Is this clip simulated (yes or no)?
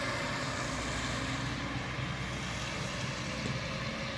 no